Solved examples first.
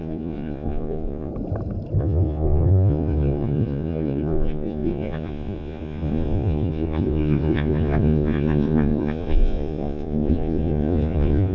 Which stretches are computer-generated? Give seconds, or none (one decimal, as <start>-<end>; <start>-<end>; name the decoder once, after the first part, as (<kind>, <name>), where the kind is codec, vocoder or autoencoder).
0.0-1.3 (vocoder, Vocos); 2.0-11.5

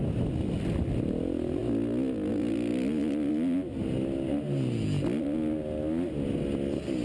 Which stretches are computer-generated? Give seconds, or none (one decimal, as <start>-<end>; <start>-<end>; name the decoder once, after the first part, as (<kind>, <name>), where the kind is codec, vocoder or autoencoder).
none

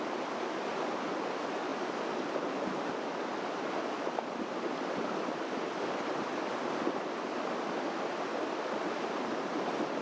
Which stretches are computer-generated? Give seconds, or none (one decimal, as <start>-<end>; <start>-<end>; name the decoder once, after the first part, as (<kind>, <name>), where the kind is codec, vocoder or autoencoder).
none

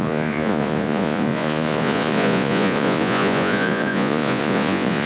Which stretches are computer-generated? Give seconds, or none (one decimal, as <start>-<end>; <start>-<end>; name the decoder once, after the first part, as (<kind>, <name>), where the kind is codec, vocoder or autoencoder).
0.0-5.1 (vocoder, Vocos)

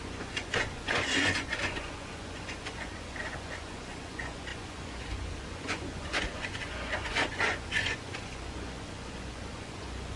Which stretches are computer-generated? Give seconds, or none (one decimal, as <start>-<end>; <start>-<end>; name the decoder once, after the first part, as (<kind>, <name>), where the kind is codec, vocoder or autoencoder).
0.0-10.2 (vocoder, Vocos)

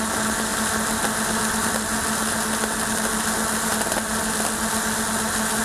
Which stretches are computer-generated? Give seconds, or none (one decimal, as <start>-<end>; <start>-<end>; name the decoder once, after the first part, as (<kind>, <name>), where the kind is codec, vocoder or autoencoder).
none